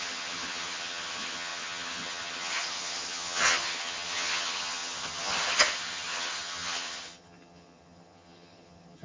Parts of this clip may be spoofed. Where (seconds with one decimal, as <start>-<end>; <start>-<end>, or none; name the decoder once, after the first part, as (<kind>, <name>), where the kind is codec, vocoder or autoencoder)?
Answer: 0.0-9.0 (vocoder, HiFi-GAN)